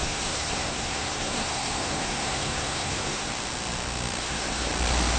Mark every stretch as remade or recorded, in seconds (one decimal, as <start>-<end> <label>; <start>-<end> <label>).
0.0-3.3 remade; 3.3-4.2 recorded; 4.2-4.7 remade; 4.7-5.2 recorded